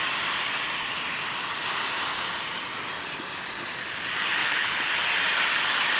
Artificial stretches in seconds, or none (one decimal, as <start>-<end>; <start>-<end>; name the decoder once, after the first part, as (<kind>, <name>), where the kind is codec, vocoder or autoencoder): 4.4-4.9 (codec, HILCodec)